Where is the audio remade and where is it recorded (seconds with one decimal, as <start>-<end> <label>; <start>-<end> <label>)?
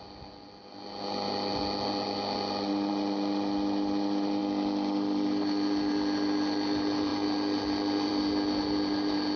0.0-9.4 recorded